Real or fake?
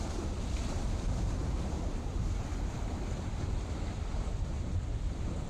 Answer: real